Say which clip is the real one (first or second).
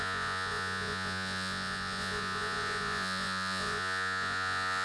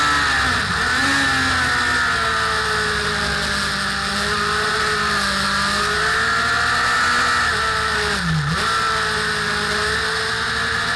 second